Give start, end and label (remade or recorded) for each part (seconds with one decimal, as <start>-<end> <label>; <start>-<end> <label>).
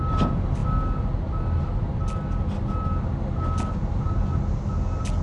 0.0-5.2 recorded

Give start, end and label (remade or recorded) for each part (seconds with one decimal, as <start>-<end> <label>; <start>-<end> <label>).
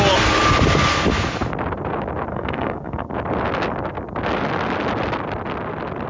0.0-2.3 recorded; 2.3-3.1 remade; 3.1-6.1 recorded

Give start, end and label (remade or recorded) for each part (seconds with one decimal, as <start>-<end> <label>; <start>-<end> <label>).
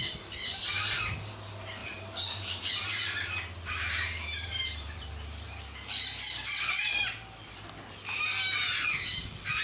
0.0-1.8 recorded; 1.8-5.6 remade; 5.6-9.6 recorded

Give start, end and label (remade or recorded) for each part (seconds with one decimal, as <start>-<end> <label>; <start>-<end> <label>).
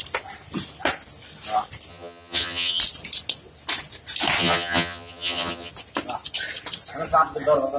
0.0-1.9 recorded; 1.9-2.8 remade; 2.8-4.4 recorded; 4.4-5.7 remade; 5.7-7.8 recorded